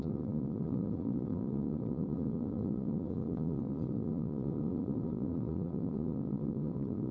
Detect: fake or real fake